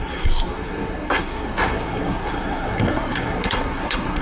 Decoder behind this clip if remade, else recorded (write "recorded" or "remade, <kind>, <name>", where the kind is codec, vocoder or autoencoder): remade, codec, SNAC